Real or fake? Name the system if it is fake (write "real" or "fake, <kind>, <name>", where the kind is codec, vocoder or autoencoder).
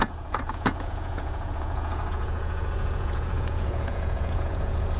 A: fake, vocoder, Vocos